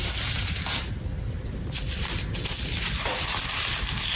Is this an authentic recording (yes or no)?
yes